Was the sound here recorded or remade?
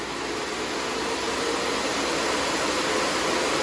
recorded